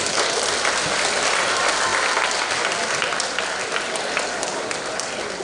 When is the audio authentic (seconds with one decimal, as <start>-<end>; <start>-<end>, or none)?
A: 0.0-5.4